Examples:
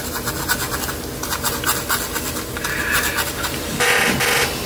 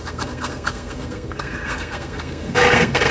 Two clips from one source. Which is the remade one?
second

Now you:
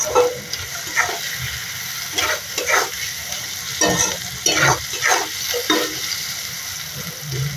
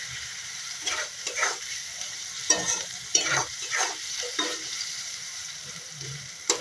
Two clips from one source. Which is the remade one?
second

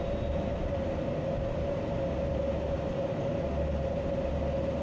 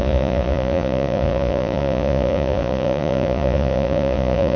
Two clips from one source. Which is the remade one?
second